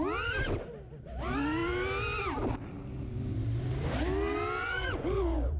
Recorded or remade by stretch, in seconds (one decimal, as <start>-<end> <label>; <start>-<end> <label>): 0.0-4.6 recorded; 4.6-5.6 remade